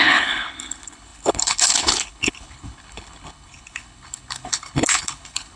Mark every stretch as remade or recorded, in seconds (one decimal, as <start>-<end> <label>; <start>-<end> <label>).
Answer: 0.0-5.6 remade